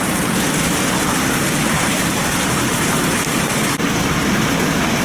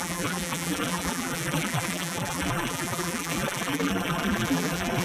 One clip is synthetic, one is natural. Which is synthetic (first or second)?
second